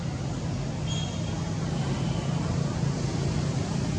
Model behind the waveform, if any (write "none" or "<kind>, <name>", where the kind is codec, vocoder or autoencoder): none